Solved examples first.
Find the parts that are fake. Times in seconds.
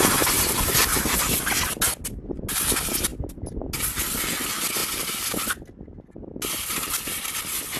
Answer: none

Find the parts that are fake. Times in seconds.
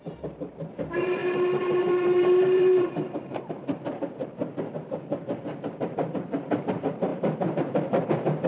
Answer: 0.0-4.4 (vocoder, BigVGAN v2); 5.7-8.5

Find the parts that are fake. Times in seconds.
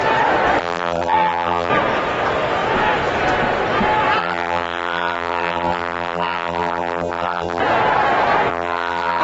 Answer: 0.6-1.7 (vocoder, BigVGAN v2); 4.2-7.6; 8.5-9.2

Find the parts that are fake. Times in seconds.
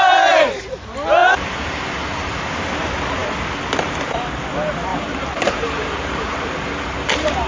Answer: 1.2-2.5 (vocoder, BigVGAN v2); 4.9-7.5